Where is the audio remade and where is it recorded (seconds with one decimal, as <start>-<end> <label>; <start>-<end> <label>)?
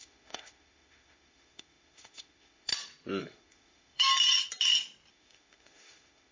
0.0-2.7 remade; 2.7-3.2 recorded; 3.2-4.1 remade; 4.1-5.1 recorded; 5.1-6.3 remade